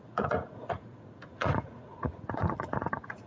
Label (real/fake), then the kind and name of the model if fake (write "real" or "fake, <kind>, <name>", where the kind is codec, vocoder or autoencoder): fake, vocoder, Vocos